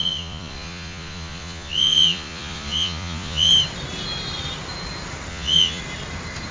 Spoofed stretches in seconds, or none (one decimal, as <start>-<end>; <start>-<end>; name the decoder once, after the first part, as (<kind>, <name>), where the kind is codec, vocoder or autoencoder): 0.0-3.5 (vocoder, Vocos); 5.3-5.8